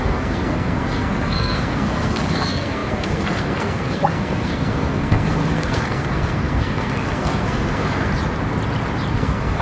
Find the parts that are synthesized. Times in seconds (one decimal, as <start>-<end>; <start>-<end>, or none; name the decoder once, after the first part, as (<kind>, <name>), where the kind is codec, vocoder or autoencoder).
0.0-8.1 (codec, SNAC); 9.1-9.6

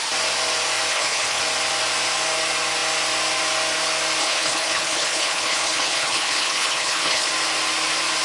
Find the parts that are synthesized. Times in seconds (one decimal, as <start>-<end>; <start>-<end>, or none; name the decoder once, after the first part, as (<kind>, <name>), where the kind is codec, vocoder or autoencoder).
0.9-1.4 (codec, HILCodec); 4.2-7.3

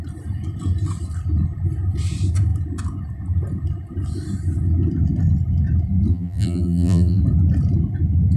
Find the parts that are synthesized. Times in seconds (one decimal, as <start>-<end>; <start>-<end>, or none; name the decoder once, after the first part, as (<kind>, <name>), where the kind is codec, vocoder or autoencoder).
6.1-7.2 (vocoder, BigVGAN v2)

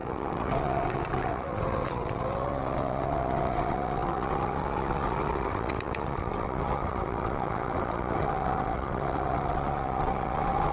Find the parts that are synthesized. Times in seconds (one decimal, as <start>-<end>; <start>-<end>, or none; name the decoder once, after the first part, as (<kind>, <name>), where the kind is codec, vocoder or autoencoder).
0.0-10.7 (vocoder, WaveNeXt)